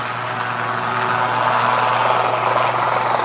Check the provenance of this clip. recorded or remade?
recorded